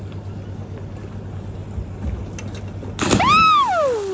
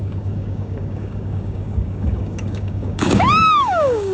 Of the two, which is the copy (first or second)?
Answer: second